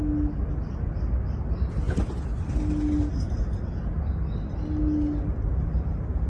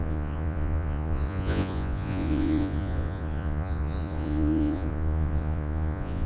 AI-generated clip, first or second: second